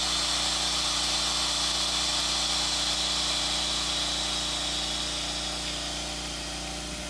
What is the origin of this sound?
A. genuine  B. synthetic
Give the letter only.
A